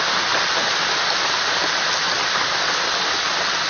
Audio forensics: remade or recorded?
recorded